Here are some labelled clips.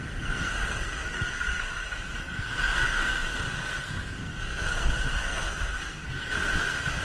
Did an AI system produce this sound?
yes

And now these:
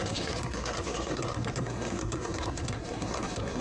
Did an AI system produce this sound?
yes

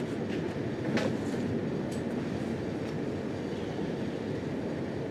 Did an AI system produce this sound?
no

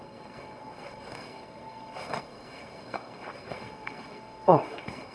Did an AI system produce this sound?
yes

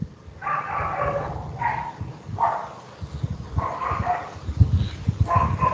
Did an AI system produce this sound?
no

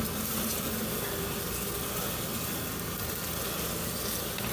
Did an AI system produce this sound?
no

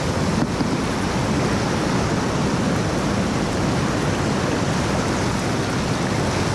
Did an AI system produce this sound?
no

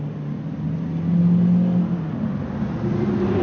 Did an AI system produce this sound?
no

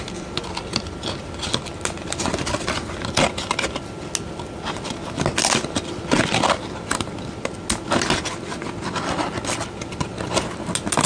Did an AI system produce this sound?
no